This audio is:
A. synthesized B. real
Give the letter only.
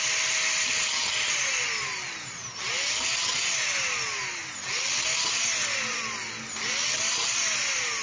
B